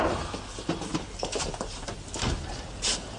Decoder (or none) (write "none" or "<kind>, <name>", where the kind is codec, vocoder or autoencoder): none